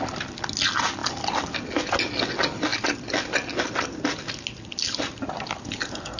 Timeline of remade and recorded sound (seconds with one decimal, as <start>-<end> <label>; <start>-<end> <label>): 0.0-6.2 recorded